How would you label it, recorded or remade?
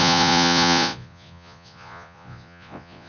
remade